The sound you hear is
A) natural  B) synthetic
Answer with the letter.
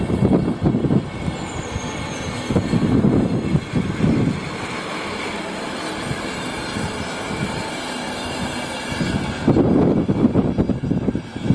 A